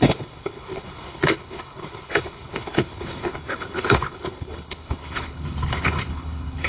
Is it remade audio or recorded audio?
remade